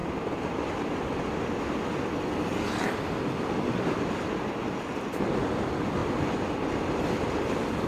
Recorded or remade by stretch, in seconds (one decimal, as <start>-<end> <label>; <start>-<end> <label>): 0.0-7.9 recorded